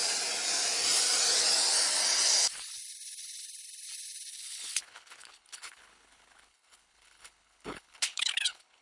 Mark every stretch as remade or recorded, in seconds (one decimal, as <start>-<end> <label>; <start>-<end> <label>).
0.0-4.3 recorded; 4.3-8.8 remade